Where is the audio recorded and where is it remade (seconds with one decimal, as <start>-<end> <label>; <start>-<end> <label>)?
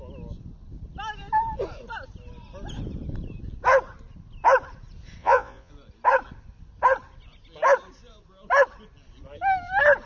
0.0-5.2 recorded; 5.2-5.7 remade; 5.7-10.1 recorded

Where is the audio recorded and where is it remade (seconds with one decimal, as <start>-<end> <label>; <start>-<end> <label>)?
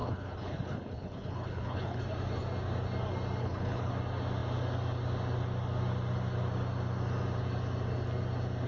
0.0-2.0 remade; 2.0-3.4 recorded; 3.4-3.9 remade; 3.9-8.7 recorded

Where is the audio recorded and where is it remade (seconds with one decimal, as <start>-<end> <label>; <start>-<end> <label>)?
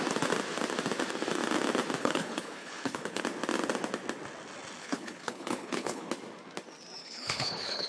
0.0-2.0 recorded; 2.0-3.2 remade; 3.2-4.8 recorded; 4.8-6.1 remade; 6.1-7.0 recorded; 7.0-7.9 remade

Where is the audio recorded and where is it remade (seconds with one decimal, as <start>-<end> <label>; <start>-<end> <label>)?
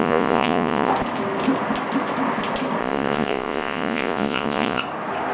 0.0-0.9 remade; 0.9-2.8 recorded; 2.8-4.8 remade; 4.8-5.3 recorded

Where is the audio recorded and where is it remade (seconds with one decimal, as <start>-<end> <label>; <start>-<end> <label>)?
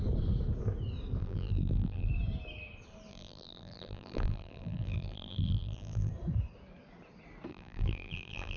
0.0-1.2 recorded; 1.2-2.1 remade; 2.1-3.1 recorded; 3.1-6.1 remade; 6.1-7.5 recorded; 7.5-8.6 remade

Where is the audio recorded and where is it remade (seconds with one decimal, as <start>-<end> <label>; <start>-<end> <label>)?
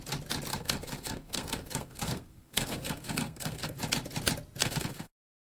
0.0-0.5 recorded; 0.5-3.8 remade; 3.8-4.6 recorded; 4.6-5.6 remade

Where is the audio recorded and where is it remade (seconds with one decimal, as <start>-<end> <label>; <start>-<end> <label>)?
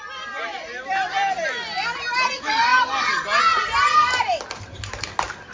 0.0-5.5 recorded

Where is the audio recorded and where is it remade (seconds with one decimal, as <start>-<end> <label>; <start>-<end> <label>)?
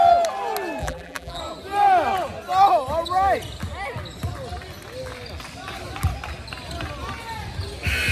0.0-0.8 recorded; 0.8-1.4 remade; 1.4-8.1 recorded